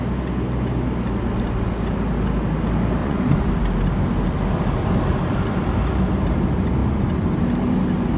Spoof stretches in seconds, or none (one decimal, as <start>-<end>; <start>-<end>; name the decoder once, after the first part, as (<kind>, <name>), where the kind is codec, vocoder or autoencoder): 3.0-3.5 (vocoder, Vocos)